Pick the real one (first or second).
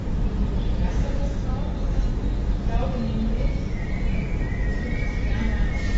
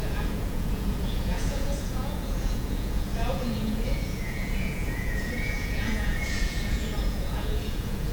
first